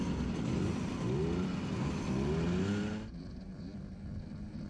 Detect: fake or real real